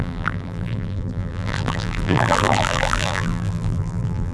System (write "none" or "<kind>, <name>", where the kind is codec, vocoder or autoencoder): vocoder, BigVGAN v2